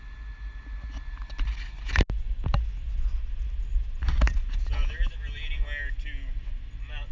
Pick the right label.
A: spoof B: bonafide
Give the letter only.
B